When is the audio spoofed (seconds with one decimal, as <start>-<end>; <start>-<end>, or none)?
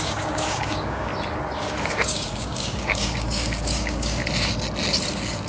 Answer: 0.0-1.1; 1.9-4.2